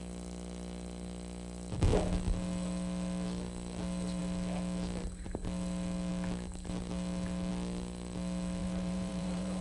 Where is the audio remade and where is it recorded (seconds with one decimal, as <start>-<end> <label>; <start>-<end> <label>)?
0.0-8.6 recorded; 8.6-9.6 remade